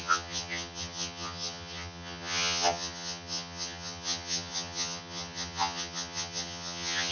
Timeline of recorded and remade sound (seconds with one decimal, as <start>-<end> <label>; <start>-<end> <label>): 0.0-7.1 remade

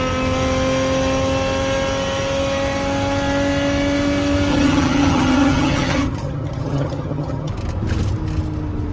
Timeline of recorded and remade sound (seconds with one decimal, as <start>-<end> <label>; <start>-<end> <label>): 0.0-4.5 recorded; 4.5-7.5 remade; 7.5-8.9 recorded

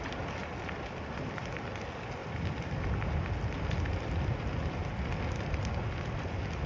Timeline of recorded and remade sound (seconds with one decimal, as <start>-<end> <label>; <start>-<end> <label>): 0.0-6.7 recorded

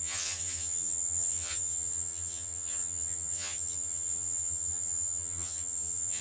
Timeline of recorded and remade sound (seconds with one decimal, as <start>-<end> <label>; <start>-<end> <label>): 0.0-6.2 remade

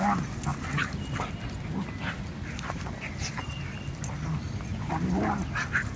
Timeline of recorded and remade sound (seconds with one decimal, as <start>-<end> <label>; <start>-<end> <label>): 0.0-6.0 recorded

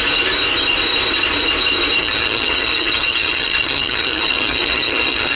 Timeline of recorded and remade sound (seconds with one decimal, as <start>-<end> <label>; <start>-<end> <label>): 0.0-2.0 recorded; 2.0-5.4 remade